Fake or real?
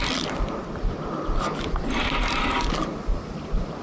real